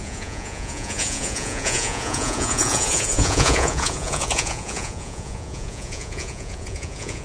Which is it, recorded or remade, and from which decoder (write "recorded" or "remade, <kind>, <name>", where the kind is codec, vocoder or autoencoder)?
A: remade, vocoder, Vocos